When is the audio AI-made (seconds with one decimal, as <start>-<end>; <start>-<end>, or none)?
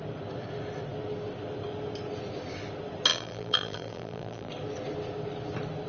3.1-4.5